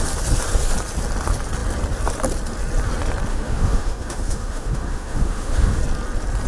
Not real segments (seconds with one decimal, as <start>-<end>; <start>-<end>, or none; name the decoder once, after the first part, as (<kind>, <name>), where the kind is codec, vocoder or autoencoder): 3.3-5.8 (autoencoder, DAC-VAE)